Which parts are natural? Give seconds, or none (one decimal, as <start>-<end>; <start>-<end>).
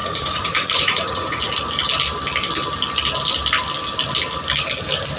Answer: 1.4-5.2